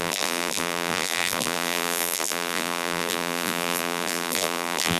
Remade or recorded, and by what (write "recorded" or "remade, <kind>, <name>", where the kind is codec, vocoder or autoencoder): remade, vocoder, BigVGAN v2